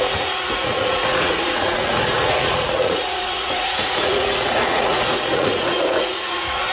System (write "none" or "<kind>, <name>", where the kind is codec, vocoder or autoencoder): vocoder, Vocos